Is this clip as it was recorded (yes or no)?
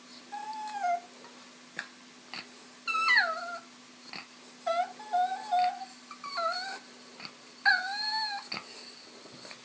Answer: yes